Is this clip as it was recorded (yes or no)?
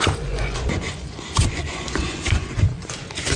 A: no